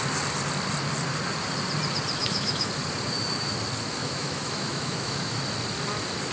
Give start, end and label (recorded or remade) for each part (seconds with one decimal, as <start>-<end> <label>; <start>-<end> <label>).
0.0-2.2 recorded; 2.2-2.7 remade; 2.7-4.0 recorded; 4.0-5.4 remade; 5.4-6.3 recorded